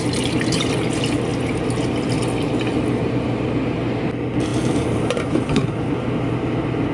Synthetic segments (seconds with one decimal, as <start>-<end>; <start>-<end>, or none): 4.5-5.9